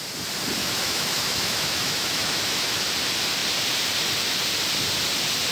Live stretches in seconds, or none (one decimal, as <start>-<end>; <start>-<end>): 0.0-0.6; 2.8-5.5

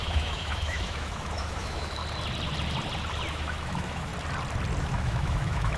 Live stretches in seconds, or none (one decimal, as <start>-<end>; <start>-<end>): 2.0-3.3; 4.1-4.8

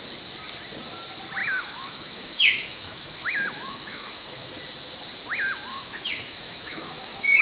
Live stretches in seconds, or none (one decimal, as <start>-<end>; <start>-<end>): 0.0-1.4; 4.6-5.7

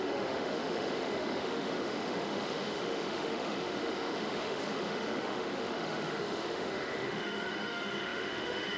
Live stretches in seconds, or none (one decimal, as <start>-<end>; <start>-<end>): none

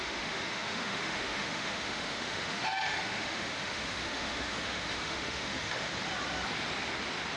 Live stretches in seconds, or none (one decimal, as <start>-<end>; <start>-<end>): 5.9-7.4

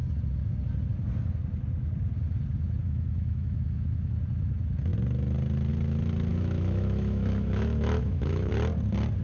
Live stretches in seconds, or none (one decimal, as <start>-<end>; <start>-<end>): 0.0-2.8; 4.1-6.3; 8.5-9.2

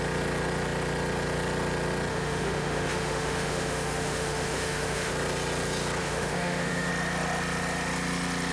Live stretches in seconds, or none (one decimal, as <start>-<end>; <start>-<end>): 0.0-2.1; 5.1-6.0; 6.9-8.5